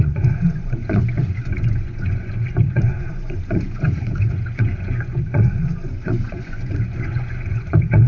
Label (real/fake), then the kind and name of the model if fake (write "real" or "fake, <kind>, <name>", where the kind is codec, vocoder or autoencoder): fake, vocoder, Vocos